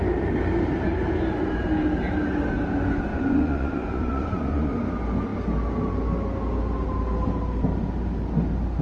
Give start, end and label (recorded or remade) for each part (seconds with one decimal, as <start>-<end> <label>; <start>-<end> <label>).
0.0-3.1 recorded; 3.1-4.7 remade; 4.7-8.8 recorded